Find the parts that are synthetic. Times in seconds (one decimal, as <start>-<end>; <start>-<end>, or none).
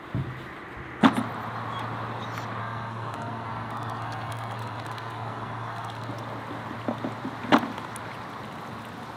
2.6-6.1